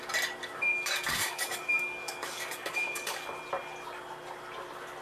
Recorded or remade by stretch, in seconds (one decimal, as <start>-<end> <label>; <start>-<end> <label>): 0.0-0.4 recorded; 0.4-3.4 remade; 3.4-5.0 recorded